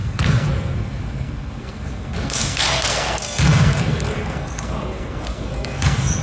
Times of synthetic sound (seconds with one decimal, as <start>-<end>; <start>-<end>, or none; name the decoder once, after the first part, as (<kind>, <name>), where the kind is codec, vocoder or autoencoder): 0.0-6.2 (codec, SNAC)

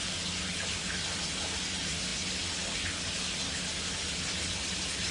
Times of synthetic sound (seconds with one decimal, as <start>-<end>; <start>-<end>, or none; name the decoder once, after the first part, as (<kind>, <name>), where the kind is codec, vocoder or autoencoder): none

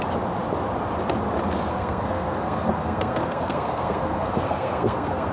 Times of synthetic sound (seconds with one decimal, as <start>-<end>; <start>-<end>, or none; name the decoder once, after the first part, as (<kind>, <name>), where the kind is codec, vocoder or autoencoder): 1.7-5.3 (codec, SNAC)

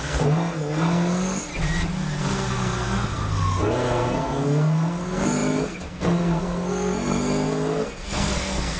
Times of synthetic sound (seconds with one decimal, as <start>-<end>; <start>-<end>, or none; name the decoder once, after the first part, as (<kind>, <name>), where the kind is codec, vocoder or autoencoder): 0.0-1.5 (codec, SNAC); 2.2-8.8

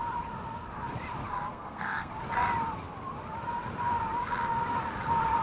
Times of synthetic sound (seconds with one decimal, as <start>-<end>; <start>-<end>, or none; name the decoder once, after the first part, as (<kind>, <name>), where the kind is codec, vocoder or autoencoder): 1.5-2.1 (codec, SNAC)

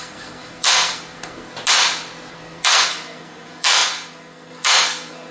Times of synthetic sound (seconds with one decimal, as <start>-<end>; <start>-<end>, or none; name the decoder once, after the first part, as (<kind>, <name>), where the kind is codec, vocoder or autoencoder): 0.0-1.5 (codec, SNAC); 2.3-5.3